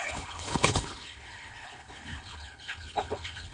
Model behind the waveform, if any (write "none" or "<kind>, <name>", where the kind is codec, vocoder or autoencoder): codec, HILCodec